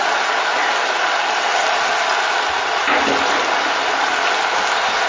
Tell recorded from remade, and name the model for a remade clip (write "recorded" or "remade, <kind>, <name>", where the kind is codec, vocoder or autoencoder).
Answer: recorded